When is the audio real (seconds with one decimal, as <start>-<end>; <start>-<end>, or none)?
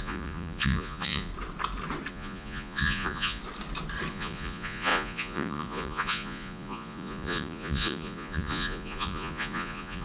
1.3-2.1; 3.4-4.1